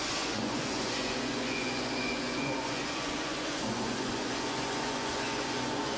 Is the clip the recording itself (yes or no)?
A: no